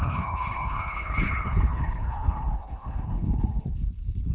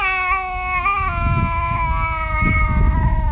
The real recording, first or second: second